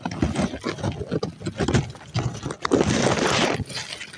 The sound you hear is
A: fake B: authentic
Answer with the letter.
B